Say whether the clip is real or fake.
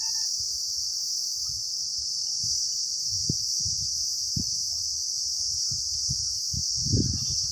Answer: real